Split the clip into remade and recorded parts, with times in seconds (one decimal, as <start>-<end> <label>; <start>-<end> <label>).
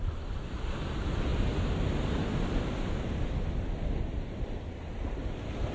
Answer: 0.0-5.7 recorded